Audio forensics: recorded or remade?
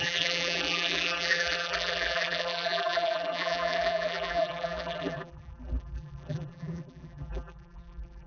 remade